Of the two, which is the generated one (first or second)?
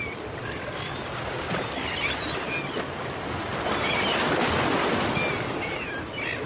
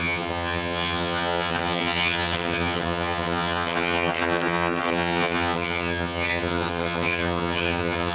second